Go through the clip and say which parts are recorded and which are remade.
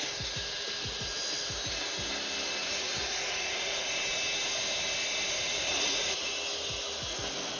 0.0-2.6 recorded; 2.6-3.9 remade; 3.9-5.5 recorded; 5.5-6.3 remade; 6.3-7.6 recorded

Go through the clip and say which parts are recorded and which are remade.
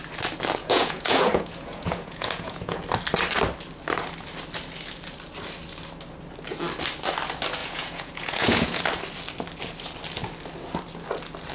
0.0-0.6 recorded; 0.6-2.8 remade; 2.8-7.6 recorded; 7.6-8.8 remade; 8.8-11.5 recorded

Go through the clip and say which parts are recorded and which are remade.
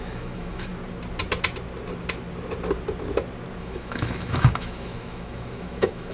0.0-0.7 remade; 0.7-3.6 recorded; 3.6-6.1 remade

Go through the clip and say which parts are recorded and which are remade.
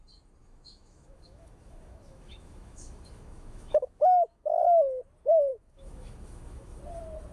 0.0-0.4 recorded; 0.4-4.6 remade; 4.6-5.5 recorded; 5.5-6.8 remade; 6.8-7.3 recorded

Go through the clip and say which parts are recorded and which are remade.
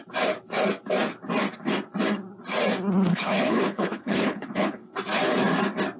0.0-3.1 recorded; 3.1-4.9 remade; 4.9-6.0 recorded